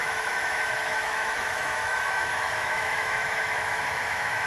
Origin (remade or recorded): remade